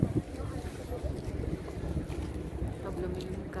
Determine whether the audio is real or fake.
real